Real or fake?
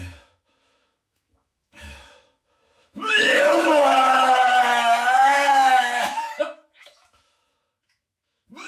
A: fake